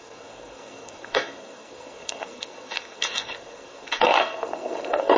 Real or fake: fake